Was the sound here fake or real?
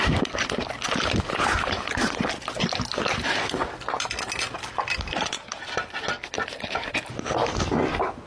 real